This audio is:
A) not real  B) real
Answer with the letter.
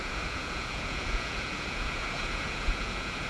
A